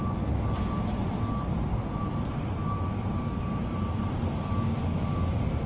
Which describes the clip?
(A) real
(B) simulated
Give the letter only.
A